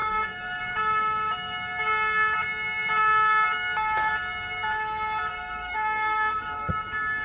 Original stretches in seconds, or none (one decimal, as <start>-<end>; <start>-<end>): 0.6-5.3; 6.7-7.2